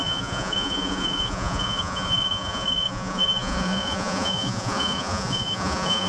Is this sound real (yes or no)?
no